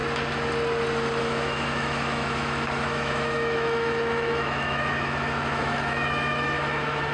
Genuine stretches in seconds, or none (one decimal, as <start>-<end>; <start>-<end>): 0.0-1.2